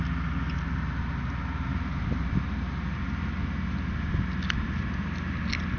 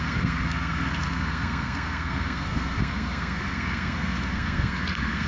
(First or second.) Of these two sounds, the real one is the first